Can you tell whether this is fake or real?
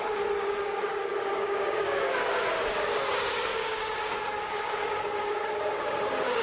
fake